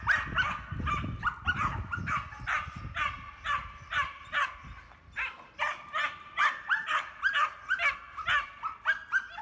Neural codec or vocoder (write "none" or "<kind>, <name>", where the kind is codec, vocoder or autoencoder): none